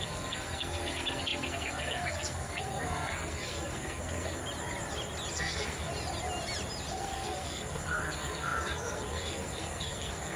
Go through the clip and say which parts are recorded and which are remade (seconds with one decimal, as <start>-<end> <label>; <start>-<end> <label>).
0.0-4.4 remade; 4.4-5.3 recorded; 5.3-5.9 remade; 5.9-6.9 recorded; 6.9-10.4 remade